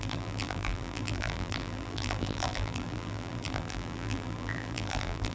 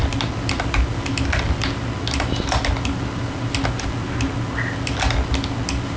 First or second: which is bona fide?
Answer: second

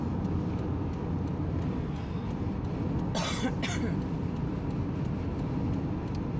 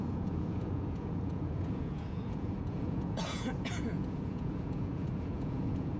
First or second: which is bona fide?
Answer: first